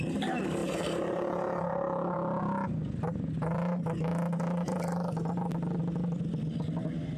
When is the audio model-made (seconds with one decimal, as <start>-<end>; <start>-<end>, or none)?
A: 0.6-2.4